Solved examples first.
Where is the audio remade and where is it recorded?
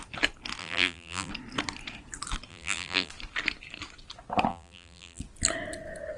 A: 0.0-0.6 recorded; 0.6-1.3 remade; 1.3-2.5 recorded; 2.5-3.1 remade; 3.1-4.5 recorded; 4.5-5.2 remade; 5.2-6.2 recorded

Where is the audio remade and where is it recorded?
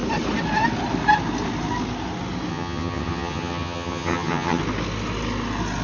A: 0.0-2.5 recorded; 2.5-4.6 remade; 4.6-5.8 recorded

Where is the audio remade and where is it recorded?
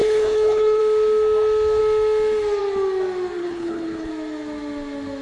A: 0.0-0.8 remade; 0.8-3.4 recorded; 3.4-4.1 remade; 4.1-5.2 recorded